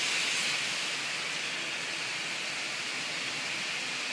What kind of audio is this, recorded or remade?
recorded